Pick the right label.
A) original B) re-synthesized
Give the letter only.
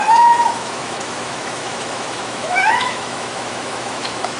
B